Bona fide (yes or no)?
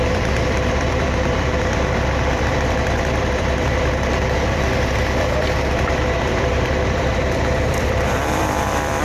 no